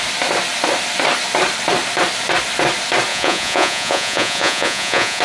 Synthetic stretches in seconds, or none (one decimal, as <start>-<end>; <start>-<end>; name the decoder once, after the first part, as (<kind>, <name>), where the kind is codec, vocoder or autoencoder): 3.1-5.2 (vocoder, Vocos)